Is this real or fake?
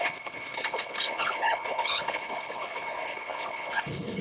fake